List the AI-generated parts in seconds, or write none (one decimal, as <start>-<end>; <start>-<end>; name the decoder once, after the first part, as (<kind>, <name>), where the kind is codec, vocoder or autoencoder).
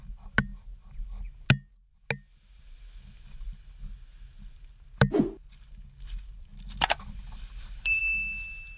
6.5-8.0 (vocoder, BigVGAN v2)